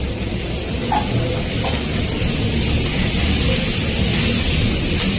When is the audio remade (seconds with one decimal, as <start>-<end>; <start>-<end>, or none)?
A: none